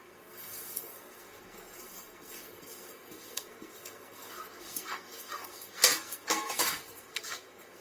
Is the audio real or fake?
fake